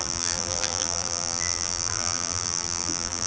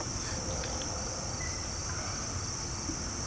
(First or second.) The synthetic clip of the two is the first